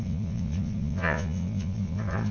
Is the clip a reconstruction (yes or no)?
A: yes